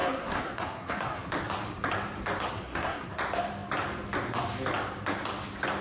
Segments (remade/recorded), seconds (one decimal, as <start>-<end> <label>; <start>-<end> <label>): 0.0-1.3 remade; 1.3-2.5 recorded; 2.5-3.1 remade; 3.1-5.8 recorded